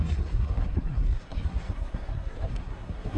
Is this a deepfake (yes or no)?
yes